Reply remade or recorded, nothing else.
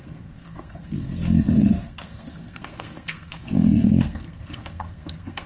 remade